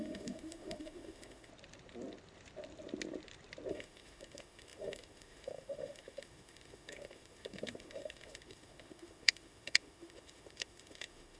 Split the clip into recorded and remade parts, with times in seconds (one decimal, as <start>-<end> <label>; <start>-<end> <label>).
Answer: 0.0-1.5 remade; 1.5-3.7 recorded; 3.7-11.4 remade